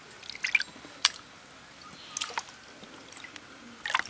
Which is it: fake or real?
real